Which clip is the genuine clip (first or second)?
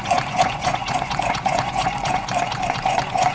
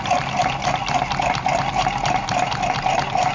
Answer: second